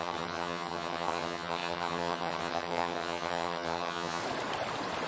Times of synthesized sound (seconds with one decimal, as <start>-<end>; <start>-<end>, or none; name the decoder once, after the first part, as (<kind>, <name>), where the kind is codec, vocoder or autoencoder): 0.0-4.2 (vocoder, HiFi-GAN)